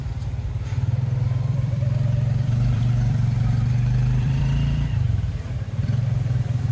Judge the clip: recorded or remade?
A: remade